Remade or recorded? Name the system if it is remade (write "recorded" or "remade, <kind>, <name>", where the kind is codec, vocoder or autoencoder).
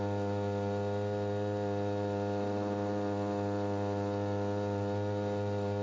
recorded